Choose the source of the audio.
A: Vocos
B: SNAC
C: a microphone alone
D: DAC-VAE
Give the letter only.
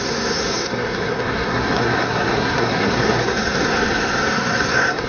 B